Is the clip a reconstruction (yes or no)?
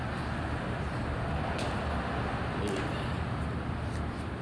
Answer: no